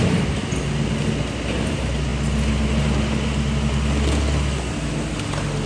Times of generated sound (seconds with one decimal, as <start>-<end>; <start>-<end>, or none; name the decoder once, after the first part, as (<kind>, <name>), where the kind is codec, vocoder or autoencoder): none